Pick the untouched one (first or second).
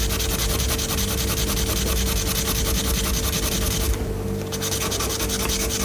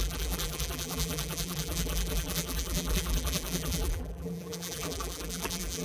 first